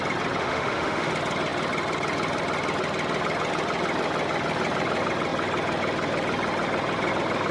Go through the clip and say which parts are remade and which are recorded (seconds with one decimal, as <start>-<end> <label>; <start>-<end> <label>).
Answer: 0.0-0.4 recorded; 0.4-1.1 remade; 1.1-7.5 recorded